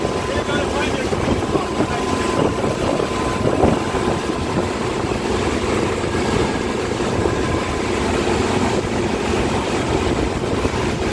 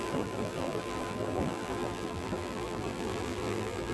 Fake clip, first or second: second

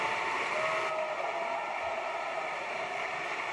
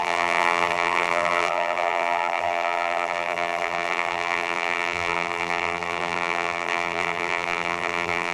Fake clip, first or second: second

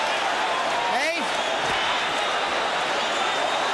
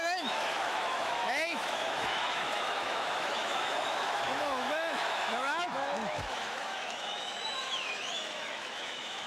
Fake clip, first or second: second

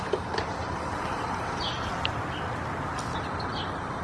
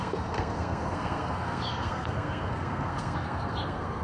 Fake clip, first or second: second